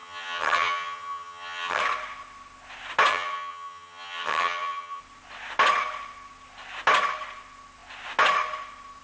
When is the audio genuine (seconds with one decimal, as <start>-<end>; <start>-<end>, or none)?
1.8-3.1; 5.0-9.0